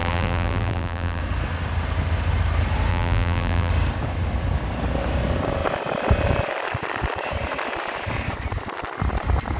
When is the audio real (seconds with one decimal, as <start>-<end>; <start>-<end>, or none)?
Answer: 1.2-2.9; 3.7-9.6